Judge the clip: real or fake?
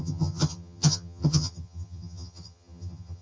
fake